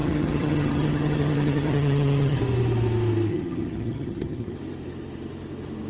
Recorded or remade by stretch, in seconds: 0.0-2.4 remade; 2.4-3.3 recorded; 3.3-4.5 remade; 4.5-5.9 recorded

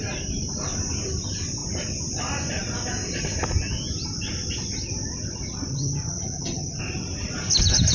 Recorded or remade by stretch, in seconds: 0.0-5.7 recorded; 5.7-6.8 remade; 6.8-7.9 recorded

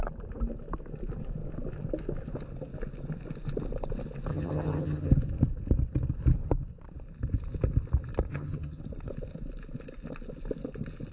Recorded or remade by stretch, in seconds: 0.0-4.3 recorded; 4.3-5.1 remade; 5.1-8.3 recorded; 8.3-8.8 remade; 8.8-11.1 recorded

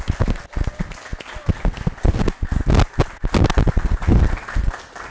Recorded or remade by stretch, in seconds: 0.0-5.1 recorded

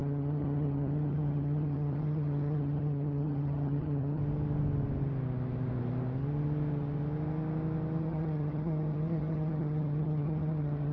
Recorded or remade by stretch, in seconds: 0.0-4.2 remade; 4.2-8.0 recorded; 8.0-10.9 remade

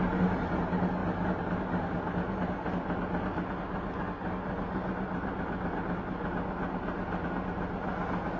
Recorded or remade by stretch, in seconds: 0.0-8.4 recorded